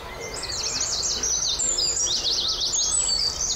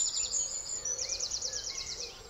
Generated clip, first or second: second